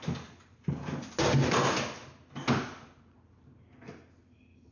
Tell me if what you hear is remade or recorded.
recorded